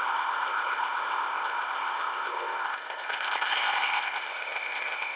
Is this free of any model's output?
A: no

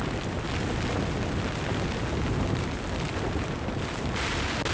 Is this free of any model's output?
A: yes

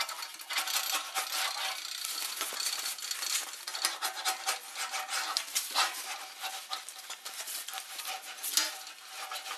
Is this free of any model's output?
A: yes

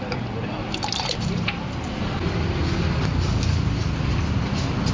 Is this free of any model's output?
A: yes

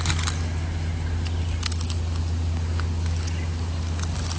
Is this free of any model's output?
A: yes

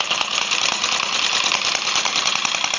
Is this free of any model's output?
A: no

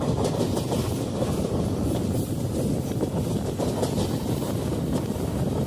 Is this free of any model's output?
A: no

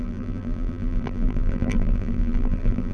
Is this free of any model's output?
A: no